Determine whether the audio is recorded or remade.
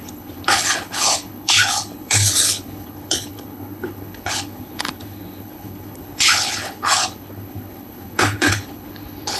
remade